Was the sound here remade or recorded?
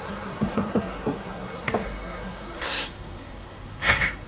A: remade